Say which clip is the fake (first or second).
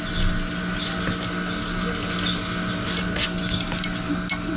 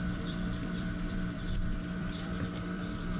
second